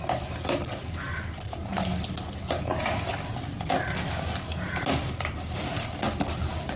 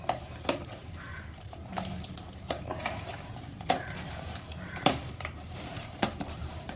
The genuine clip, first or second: first